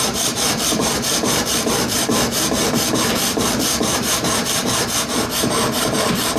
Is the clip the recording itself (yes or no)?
no